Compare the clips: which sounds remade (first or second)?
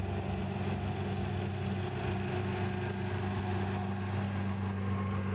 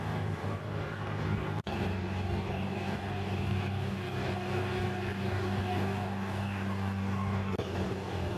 second